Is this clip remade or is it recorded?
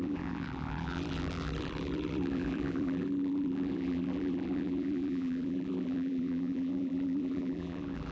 remade